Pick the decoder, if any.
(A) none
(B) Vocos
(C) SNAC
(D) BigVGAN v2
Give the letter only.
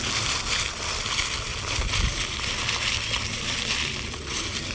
A